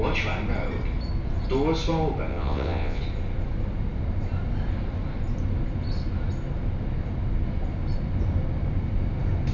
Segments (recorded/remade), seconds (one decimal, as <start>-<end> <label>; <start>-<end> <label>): 0.0-2.3 recorded; 2.3-3.0 remade; 3.0-9.5 recorded